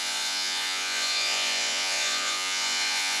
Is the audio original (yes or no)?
no